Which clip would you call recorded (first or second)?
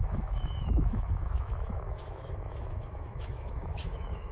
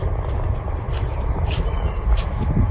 second